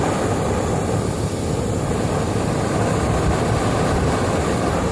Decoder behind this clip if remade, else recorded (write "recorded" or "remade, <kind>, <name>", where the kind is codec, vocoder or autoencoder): recorded